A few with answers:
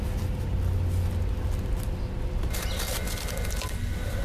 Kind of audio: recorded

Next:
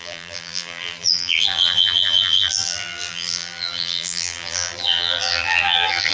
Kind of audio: remade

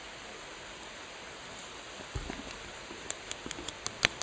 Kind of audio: recorded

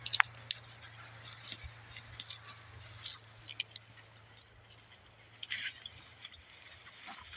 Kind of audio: recorded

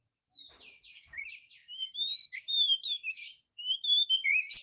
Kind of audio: remade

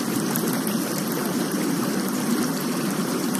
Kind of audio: remade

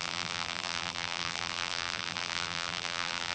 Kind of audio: remade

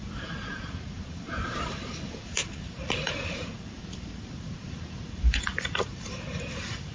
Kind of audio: remade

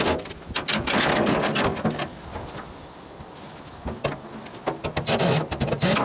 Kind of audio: recorded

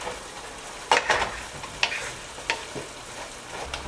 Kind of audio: recorded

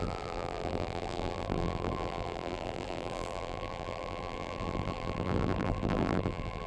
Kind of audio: remade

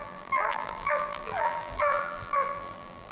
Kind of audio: remade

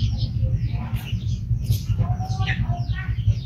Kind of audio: recorded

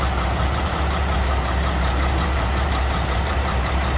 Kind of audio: remade